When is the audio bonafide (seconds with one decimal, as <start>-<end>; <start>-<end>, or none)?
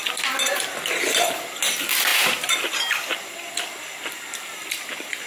0.0-2.1